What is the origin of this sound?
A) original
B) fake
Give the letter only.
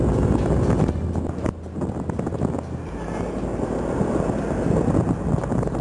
A